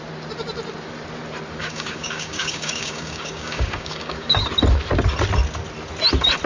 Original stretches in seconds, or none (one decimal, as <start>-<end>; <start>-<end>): 0.0-1.6; 4.5-6.5